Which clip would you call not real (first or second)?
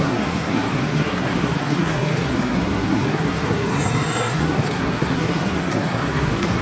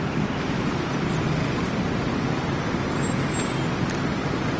first